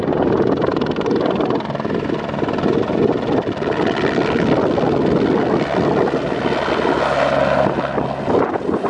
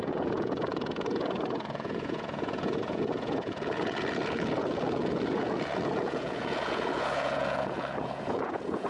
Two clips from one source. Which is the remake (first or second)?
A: second